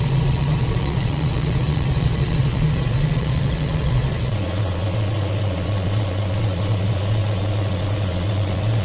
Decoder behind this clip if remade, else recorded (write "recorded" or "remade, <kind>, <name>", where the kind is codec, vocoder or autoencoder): remade, vocoder, Vocos